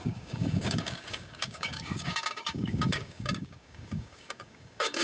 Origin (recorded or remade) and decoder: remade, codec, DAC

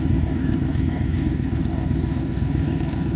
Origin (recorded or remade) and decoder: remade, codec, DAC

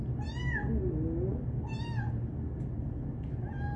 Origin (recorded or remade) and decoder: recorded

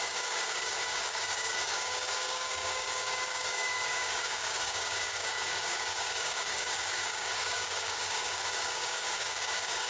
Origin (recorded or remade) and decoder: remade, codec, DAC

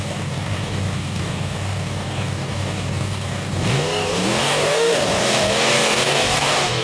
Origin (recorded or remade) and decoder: remade, codec, DAC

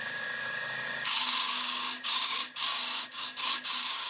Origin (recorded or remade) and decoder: remade, codec, DAC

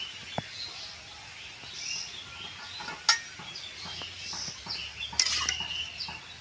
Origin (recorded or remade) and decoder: recorded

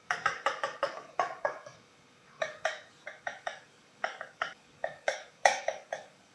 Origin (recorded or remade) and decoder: remade, codec, DAC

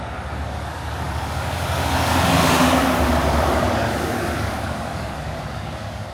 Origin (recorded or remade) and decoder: remade, codec, DAC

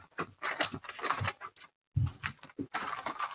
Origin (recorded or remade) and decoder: recorded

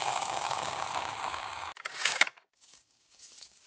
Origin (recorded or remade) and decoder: remade, codec, DAC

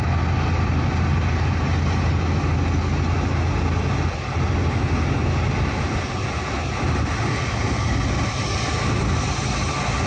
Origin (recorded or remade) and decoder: recorded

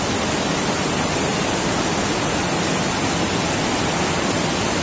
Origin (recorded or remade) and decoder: recorded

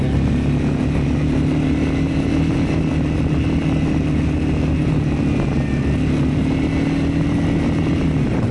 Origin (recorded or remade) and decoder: recorded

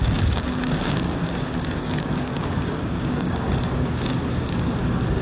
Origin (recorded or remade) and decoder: remade, codec, DAC